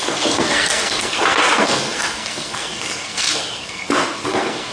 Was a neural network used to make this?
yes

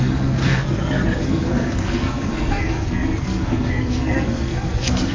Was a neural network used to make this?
yes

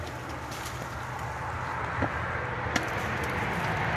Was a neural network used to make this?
no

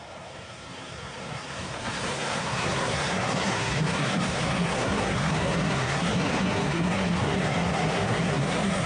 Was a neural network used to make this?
yes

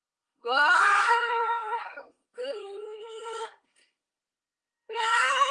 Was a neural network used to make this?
yes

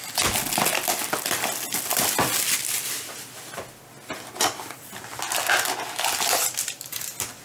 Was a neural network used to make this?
no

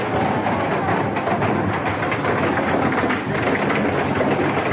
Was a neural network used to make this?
no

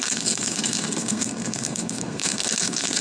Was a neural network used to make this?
yes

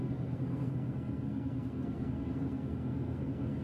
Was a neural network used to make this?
yes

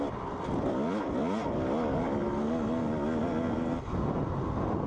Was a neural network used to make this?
no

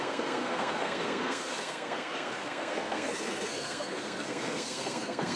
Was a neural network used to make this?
yes